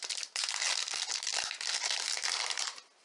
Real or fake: real